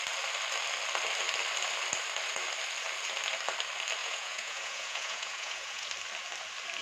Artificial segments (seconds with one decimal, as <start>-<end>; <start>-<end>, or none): 4.0-5.9